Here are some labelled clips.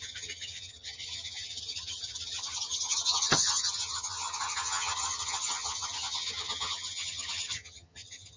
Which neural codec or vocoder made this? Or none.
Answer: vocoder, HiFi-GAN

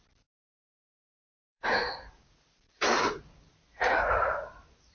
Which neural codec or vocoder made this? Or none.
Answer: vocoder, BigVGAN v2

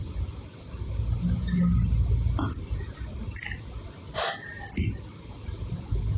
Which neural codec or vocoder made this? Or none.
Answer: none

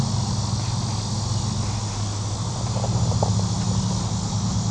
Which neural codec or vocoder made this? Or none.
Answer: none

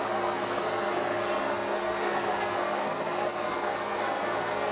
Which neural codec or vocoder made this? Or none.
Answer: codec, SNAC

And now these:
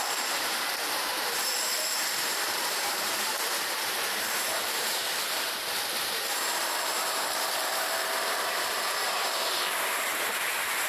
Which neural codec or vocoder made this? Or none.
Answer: vocoder, BigVGAN v2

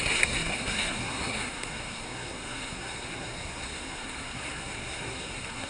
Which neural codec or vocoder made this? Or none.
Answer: codec, SNAC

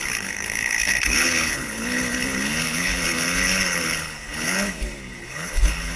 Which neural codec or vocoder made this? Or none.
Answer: codec, HILCodec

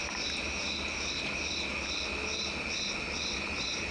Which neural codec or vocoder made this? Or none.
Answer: none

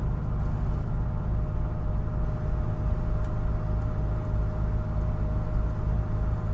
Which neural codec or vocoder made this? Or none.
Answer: none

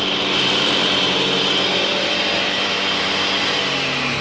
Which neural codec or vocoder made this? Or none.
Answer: none